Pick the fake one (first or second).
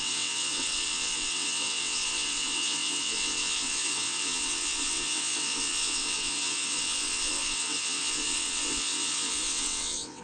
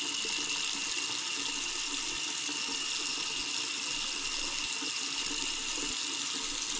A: first